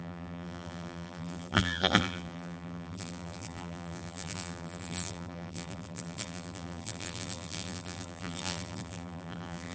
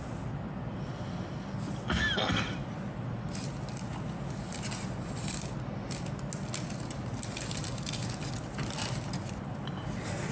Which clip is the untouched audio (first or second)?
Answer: second